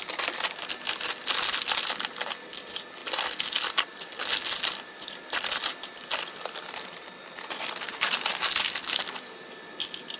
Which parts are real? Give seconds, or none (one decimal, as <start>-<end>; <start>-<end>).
0.0-10.2